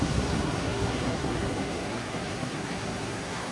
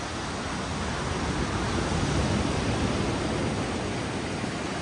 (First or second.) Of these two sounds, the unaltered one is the second